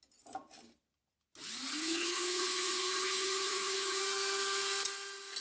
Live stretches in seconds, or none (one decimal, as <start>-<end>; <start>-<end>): 0.0-1.7; 4.0-5.4